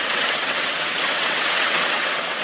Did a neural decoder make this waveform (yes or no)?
yes